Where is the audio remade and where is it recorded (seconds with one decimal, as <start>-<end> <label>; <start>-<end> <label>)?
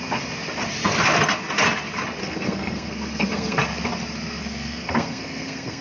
0.0-2.2 recorded; 2.2-3.6 remade; 3.6-4.4 recorded; 4.4-5.8 remade